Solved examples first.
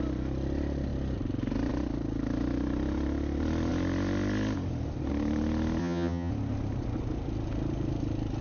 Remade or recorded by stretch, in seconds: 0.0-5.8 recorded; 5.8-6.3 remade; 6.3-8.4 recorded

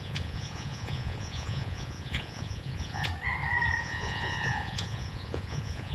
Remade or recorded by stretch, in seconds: 0.0-3.1 remade; 3.1-3.8 recorded; 3.8-5.9 remade

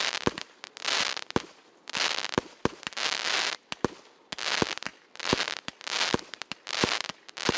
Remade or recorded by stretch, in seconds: 0.0-7.6 recorded

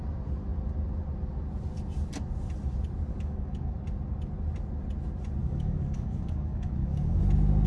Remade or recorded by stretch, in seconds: 0.0-3.1 recorded; 3.1-3.7 remade; 3.7-5.4 recorded; 5.4-7.2 remade; 7.2-7.7 recorded

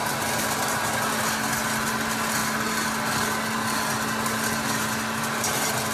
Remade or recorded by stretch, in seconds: 0.0-5.9 recorded